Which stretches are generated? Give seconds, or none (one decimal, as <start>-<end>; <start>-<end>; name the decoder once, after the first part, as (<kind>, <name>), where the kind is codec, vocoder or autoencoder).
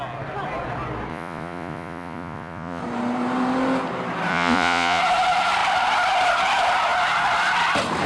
1.1-2.8 (vocoder, Vocos); 4.3-5.0